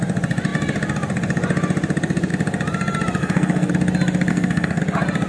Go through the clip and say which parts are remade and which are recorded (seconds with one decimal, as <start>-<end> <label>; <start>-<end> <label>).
0.0-3.2 recorded; 3.2-3.7 remade; 3.7-4.3 recorded; 4.3-4.8 remade; 4.8-5.3 recorded